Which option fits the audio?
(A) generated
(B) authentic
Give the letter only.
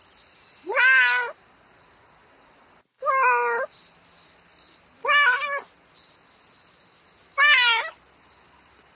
B